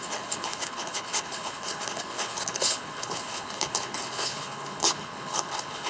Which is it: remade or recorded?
remade